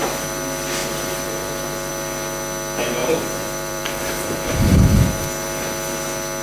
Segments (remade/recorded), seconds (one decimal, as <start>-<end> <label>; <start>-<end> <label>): 0.0-0.8 recorded; 0.8-1.9 remade; 1.9-3.0 recorded; 3.0-5.2 remade; 5.2-6.4 recorded